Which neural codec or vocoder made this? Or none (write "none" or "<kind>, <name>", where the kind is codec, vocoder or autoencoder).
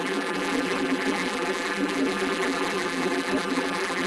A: vocoder, BigVGAN v2